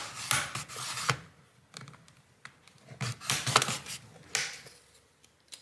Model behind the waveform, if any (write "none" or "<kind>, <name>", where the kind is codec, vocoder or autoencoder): none